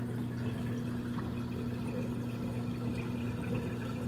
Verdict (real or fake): real